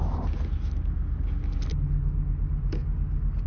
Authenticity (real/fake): real